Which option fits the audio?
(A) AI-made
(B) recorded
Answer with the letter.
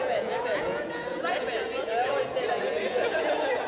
A